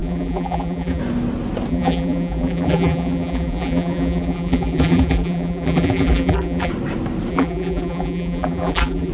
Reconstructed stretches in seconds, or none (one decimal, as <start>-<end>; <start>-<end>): 0.0-1.0; 1.7-6.7; 7.3-9.1